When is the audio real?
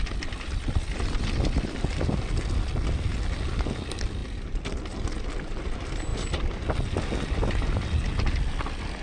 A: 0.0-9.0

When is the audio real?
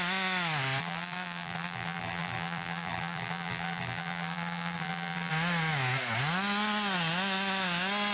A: 0.0-0.8; 5.3-8.1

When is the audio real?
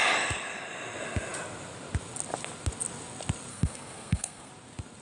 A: 0.0-3.5; 4.5-5.0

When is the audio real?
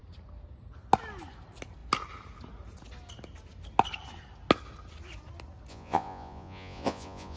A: 0.0-5.7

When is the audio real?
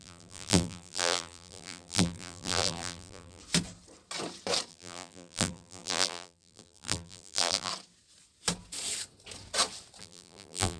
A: 3.4-4.7; 7.7-10.0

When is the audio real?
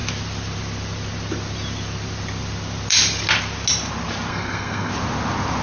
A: 0.0-4.3; 4.9-5.6